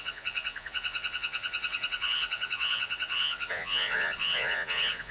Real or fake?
fake